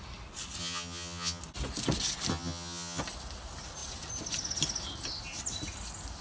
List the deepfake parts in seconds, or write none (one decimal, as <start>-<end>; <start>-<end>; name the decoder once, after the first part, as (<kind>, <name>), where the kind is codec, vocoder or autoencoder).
0.6-1.4 (vocoder, HiFi-GAN); 2.3-3.0